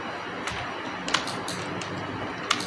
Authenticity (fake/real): real